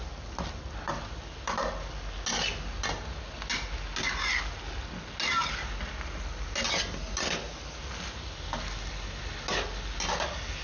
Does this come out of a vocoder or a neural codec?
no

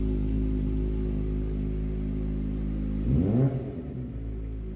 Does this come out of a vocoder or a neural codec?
no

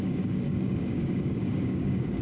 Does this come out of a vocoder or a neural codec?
yes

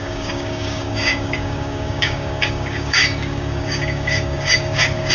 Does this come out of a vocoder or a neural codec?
yes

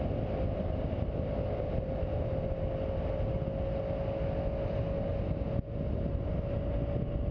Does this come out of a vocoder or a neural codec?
no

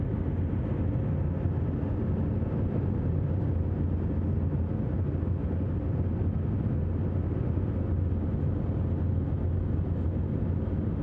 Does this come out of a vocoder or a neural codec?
no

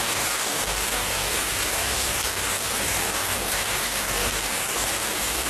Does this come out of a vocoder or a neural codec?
yes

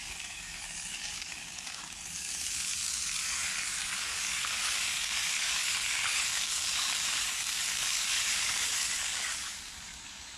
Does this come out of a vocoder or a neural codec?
yes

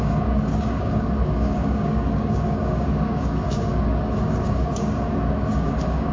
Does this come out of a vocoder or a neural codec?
yes